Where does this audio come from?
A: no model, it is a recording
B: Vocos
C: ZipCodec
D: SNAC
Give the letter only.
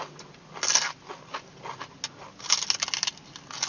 A